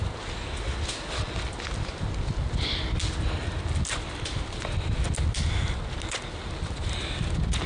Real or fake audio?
real